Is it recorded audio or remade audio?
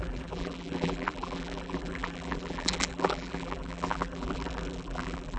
remade